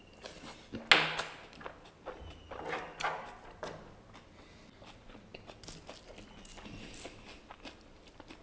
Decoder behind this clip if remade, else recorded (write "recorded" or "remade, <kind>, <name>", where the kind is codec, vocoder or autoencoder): recorded